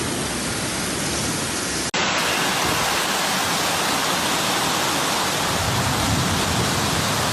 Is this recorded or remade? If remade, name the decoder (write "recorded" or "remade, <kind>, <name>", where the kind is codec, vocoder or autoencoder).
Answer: recorded